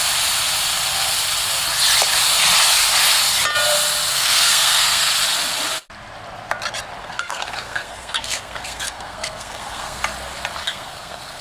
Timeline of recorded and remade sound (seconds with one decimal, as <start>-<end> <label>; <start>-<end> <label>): 0.0-4.1 recorded; 4.1-5.1 remade; 5.1-7.0 recorded; 7.0-10.0 remade; 10.0-10.6 recorded; 10.6-11.4 remade